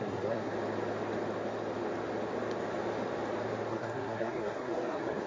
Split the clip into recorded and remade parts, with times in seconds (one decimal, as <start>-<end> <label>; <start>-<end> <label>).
0.0-0.5 remade; 0.5-3.7 recorded; 3.7-5.3 remade